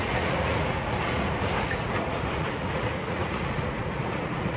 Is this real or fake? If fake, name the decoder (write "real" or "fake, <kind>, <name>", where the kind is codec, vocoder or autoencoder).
fake, vocoder, Vocos